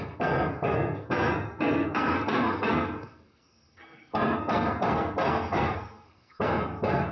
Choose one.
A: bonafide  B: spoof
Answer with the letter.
B